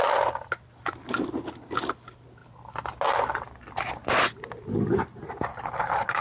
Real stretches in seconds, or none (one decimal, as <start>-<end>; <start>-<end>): 0.0-5.5